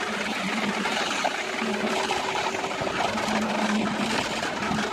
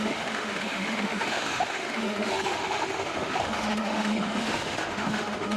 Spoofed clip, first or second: second